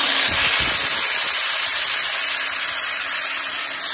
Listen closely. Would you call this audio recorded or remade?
recorded